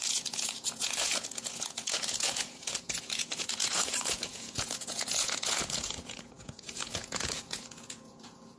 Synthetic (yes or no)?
yes